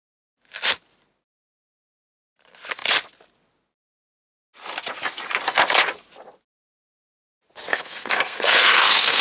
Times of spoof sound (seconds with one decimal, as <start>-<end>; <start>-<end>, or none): 7.7-9.2